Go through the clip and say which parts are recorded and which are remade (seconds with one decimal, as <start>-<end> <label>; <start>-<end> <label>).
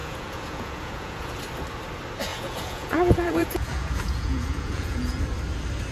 0.0-1.4 remade; 1.4-2.3 recorded; 2.3-5.2 remade; 5.2-5.9 recorded